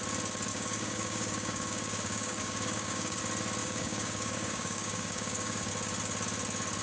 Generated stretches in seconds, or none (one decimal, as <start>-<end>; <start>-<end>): 0.5-3.2; 3.6-5.7